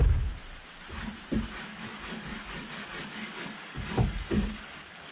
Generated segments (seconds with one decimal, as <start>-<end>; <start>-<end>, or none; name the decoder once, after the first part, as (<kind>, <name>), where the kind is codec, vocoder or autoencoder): 1.7-5.1 (codec, DAC)